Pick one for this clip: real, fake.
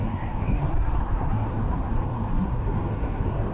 fake